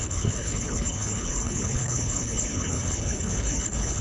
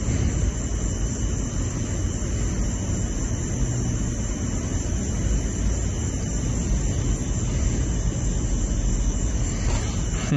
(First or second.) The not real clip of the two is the first